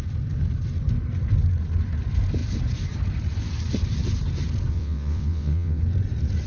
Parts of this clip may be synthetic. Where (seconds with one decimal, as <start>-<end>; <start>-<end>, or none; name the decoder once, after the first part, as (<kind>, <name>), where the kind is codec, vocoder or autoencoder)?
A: 4.7-5.8 (vocoder, WaveNeXt)

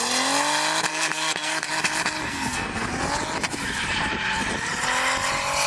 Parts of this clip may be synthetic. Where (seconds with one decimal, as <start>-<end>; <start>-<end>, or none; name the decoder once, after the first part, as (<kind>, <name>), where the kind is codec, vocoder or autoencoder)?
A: 0.9-1.7 (codec, SNAC); 2.2-2.9

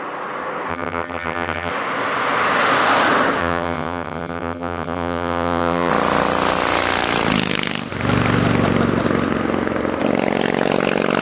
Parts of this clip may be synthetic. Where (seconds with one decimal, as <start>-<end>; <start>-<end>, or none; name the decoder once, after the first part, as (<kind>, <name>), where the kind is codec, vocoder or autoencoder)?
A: 0.7-1.7 (vocoder, HiFi-GAN); 3.4-5.9